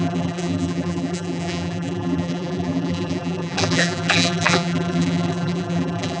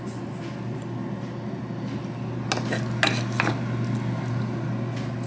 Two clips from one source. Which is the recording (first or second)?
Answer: second